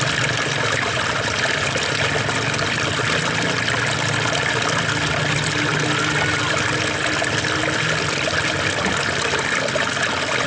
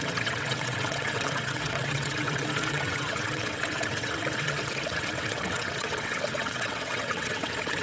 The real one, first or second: first